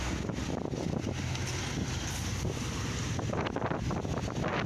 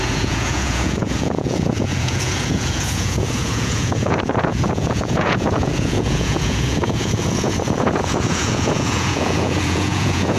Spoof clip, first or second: second